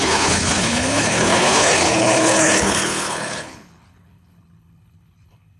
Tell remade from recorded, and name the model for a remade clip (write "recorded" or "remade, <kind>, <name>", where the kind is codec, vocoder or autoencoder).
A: remade, codec, HILCodec